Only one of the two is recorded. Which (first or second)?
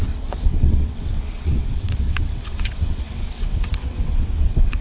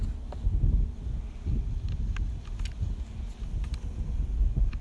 second